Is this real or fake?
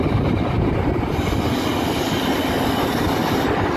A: real